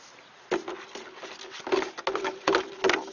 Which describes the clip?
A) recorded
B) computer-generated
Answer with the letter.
A